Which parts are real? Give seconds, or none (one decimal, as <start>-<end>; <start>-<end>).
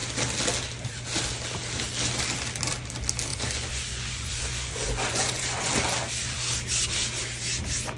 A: 0.0-3.3; 5.7-8.0